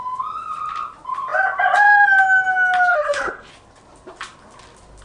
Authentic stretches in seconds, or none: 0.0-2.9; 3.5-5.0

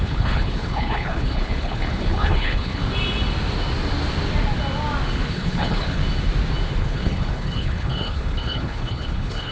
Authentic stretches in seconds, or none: 2.8-5.3; 6.0-6.8

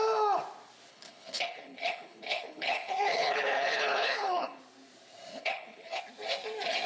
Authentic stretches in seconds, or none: 0.0-0.9; 4.6-5.3; 6.0-6.9

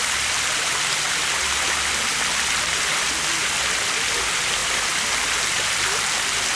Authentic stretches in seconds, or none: 0.0-6.6

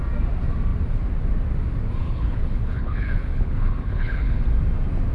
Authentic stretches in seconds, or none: 0.0-2.0; 4.4-5.1